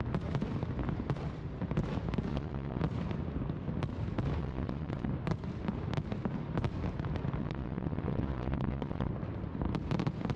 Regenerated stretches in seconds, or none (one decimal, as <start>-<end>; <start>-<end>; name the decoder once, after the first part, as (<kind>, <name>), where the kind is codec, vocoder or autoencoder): 2.3-2.8 (vocoder, Vocos); 4.4-5.1; 7.4-9.1